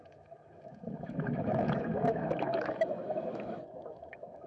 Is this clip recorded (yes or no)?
no